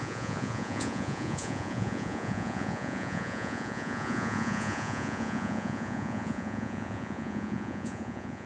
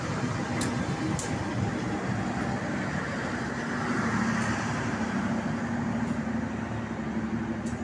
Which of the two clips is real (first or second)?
second